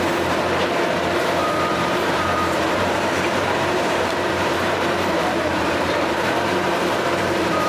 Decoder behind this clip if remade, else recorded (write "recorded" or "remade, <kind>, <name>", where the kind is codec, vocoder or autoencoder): remade, vocoder, BigVGAN v2